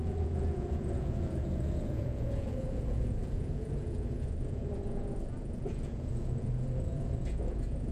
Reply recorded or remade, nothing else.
remade